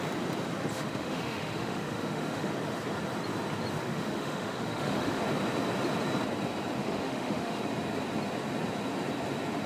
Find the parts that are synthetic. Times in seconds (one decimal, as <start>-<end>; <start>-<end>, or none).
0.7-2.5; 3.8-5.2; 6.8-7.6